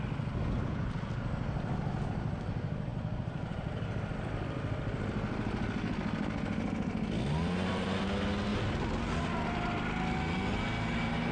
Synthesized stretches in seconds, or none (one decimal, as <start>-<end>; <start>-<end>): 2.9-3.9; 8.5-9.1